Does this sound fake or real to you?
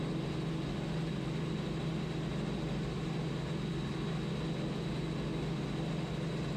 real